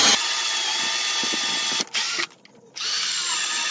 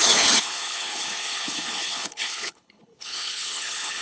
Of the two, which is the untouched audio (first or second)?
first